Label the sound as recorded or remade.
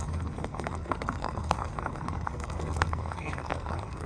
remade